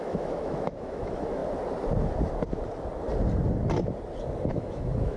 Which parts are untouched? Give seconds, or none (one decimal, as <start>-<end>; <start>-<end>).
1.4-4.5